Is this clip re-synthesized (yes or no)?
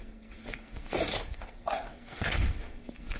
yes